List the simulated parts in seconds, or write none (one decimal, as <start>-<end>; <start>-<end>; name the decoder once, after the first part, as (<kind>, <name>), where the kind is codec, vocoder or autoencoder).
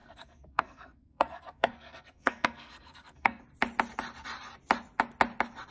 0.0-3.4 (codec, SNAC)